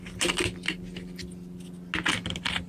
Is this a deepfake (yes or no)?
no